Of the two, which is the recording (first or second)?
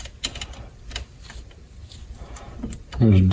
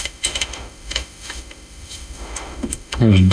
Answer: first